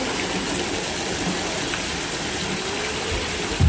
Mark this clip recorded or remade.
recorded